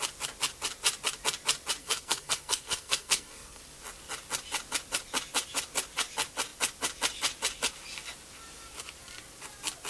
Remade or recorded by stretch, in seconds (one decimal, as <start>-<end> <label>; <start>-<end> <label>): 0.0-1.8 recorded; 1.8-3.6 remade; 3.6-9.9 recorded